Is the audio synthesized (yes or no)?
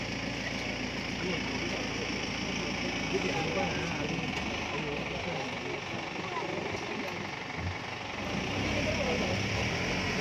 no